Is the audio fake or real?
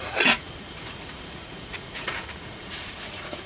fake